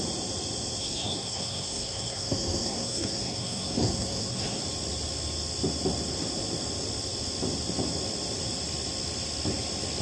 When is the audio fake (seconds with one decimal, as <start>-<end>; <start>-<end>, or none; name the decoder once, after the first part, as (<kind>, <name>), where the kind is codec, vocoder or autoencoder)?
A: 0.8-4.6 (codec, SNAC)